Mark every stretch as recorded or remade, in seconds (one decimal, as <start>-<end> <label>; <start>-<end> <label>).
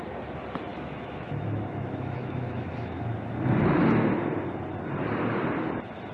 0.0-0.7 recorded; 0.7-3.8 remade; 3.8-6.1 recorded